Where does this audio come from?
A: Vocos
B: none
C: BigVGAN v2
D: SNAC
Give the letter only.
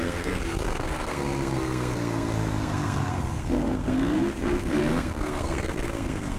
D